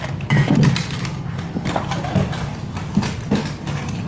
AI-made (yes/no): no